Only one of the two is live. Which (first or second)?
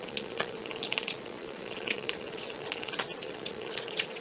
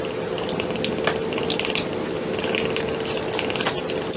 second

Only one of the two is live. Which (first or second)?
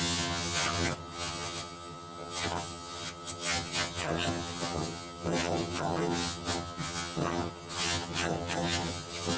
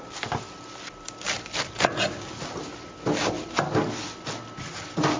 second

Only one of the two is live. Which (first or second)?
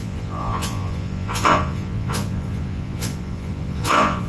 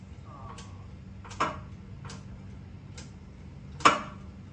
second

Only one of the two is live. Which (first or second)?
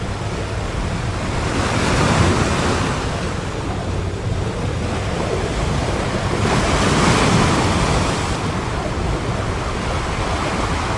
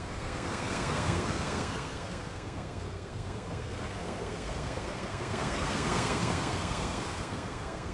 first